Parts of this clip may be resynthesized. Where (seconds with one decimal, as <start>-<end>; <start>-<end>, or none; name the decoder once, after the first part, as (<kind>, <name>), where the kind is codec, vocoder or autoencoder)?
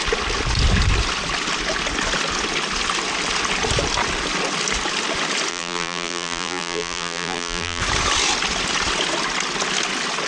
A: 5.5-7.8 (vocoder, BigVGAN v2)